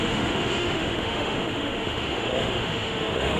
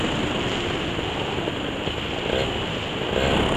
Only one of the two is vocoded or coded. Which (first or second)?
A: first